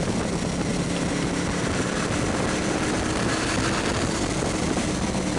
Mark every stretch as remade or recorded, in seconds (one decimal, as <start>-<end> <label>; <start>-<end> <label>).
0.0-5.4 recorded